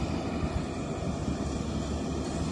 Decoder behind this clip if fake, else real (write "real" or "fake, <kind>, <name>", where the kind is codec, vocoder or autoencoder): real